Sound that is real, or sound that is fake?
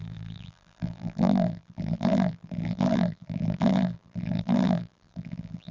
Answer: fake